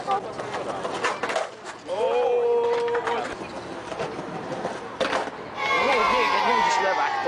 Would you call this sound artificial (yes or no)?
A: no